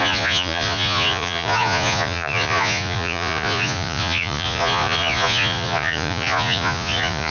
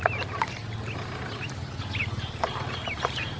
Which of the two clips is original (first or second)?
second